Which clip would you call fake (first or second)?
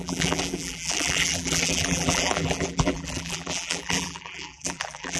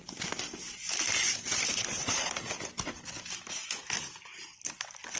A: first